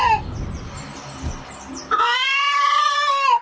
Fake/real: real